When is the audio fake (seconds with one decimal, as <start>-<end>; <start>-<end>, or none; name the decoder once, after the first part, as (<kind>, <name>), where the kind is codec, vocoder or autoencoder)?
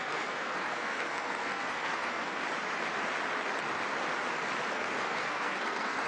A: 0.0-2.4 (codec, SNAC); 4.7-6.1